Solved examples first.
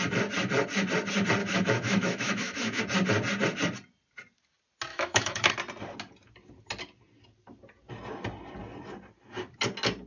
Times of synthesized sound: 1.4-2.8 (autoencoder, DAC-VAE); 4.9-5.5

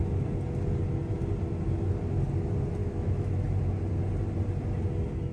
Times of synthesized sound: 2.8-3.4 (autoencoder, DAC-VAE)

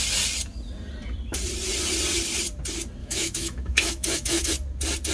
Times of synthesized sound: 3.0-4.5 (autoencoder, DAC-VAE)

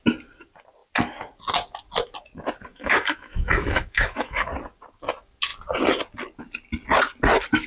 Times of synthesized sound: 2.7-4.5 (autoencoder, DAC-VAE)

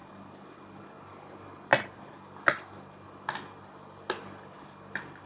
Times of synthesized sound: none